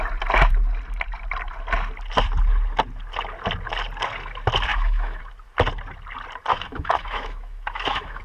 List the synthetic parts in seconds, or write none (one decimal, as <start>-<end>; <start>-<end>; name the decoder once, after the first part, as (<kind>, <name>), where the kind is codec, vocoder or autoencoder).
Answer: 4.7-5.2 (autoencoder, DAC-VAE); 6.5-8.2